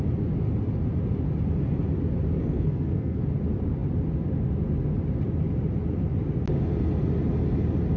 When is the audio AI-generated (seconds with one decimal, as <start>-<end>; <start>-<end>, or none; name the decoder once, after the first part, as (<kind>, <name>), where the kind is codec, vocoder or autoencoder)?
2.4-3.2 (codec, SNAC)